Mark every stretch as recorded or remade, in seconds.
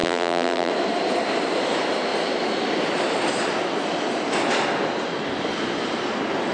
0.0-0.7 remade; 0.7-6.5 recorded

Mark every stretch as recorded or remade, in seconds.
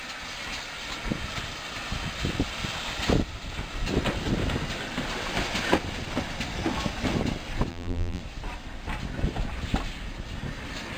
0.0-7.7 recorded; 7.7-8.2 remade; 8.2-11.0 recorded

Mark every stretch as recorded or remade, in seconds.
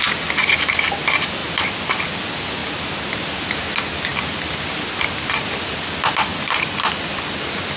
0.0-1.4 recorded; 1.4-2.0 remade; 2.0-2.6 recorded; 2.6-3.4 remade; 3.4-4.1 recorded; 4.1-5.4 remade; 5.4-6.3 recorded; 6.3-7.0 remade; 7.0-7.8 recorded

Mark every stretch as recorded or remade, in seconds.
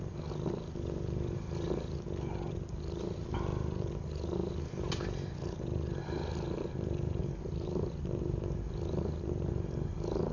0.0-4.4 recorded; 4.4-4.9 remade; 4.9-7.2 recorded; 7.2-9.5 remade; 9.5-10.3 recorded